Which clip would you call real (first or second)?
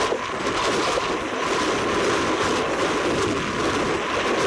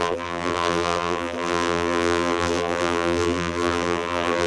first